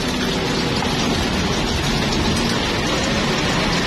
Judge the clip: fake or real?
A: real